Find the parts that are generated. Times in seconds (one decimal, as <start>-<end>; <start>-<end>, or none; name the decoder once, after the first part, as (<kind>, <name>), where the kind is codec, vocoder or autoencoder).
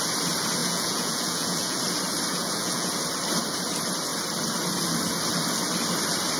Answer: 0.6-1.8 (vocoder, Vocos); 2.3-2.9